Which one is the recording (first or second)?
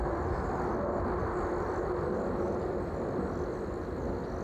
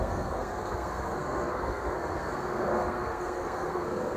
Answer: first